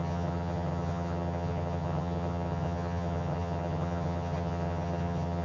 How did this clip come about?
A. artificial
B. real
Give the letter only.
A